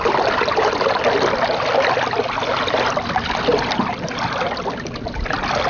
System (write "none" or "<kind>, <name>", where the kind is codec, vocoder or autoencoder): none